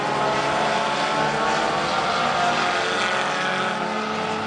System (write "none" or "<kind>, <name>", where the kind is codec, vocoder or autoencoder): none